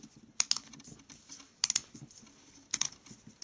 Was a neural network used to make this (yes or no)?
no